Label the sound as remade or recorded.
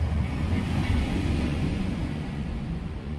remade